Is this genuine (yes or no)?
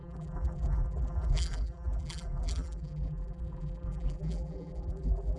no